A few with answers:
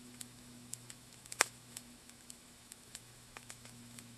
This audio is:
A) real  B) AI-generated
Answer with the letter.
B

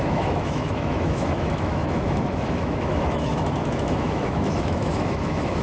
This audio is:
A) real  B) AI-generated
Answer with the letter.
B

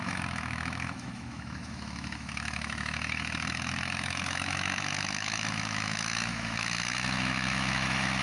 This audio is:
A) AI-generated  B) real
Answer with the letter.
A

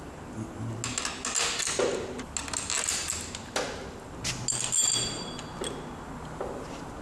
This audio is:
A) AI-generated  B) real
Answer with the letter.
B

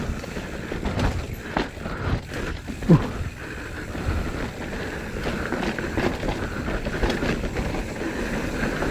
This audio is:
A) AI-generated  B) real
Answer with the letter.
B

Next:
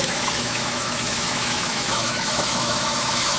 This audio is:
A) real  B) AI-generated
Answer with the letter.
B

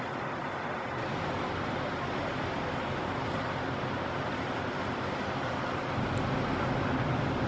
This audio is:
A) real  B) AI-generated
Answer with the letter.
A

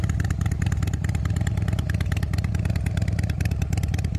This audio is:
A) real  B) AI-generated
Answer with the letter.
A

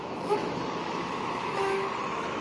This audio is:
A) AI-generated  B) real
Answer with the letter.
A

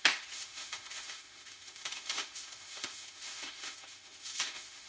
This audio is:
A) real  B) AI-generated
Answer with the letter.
B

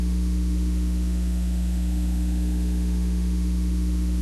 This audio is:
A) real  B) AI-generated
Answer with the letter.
B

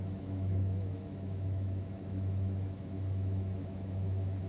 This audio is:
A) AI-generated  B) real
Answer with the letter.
A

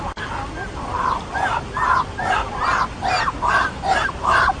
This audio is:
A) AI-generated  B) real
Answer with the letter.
B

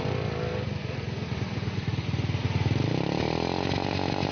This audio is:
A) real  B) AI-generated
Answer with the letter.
A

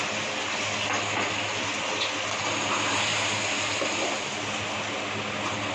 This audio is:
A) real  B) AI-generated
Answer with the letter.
A